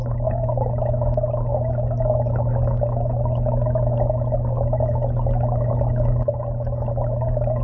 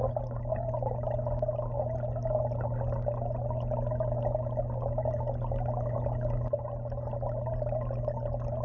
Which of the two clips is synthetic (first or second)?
first